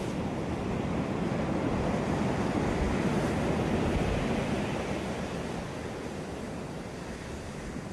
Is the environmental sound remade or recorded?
recorded